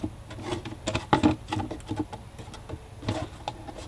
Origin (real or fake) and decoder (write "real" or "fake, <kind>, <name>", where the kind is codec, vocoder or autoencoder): real